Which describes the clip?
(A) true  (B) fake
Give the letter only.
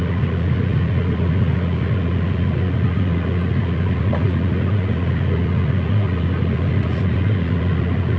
B